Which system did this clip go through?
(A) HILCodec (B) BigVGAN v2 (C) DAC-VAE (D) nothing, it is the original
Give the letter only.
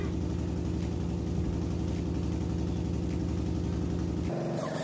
D